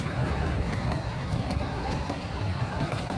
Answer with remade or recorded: remade